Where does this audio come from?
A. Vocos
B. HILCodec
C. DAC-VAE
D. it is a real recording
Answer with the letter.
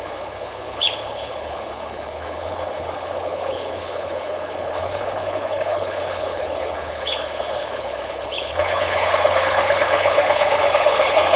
B